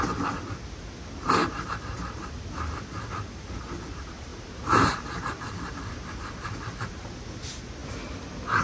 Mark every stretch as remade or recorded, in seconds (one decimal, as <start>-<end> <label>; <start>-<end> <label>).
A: 0.0-1.4 recorded; 1.4-2.3 remade; 2.3-4.3 recorded; 4.3-7.2 remade; 7.2-8.6 recorded